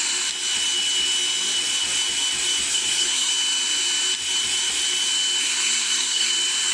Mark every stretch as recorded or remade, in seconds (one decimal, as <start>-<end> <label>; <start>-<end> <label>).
0.0-2.7 recorded; 2.7-3.3 remade; 3.3-5.4 recorded; 5.4-6.3 remade; 6.3-6.7 recorded